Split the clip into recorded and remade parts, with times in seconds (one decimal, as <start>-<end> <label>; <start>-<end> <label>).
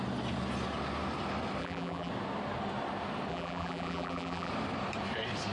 0.0-1.6 recorded; 1.6-2.1 remade; 2.1-3.3 recorded; 3.3-4.5 remade; 4.5-5.5 recorded